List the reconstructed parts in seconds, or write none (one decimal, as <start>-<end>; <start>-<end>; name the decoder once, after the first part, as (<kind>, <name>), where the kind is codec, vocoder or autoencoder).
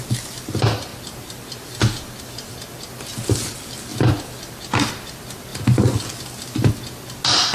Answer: none